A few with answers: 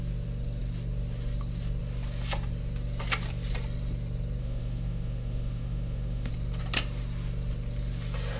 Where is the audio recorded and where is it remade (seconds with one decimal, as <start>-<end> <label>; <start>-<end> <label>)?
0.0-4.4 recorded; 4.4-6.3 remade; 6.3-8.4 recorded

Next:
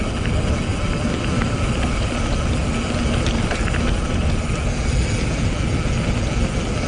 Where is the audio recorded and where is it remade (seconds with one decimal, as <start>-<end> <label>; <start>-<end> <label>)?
0.0-6.9 recorded

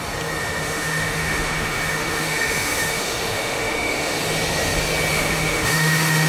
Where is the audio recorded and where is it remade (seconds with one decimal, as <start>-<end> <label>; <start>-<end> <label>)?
0.0-0.4 recorded; 0.4-4.2 remade; 4.2-5.1 recorded; 5.1-6.3 remade